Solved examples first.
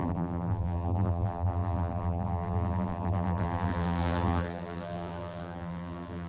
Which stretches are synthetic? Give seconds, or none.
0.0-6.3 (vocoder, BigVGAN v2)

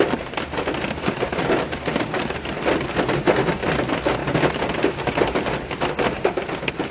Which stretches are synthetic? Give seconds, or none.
none

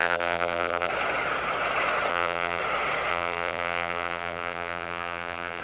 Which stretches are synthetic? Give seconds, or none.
0.0-0.9 (vocoder, BigVGAN v2); 2.1-2.6; 3.1-5.6